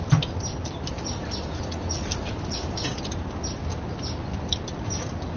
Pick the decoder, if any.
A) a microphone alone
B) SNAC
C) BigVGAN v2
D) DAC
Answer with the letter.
A